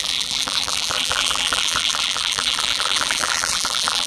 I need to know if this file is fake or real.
fake